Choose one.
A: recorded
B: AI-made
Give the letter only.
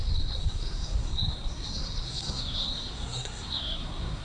B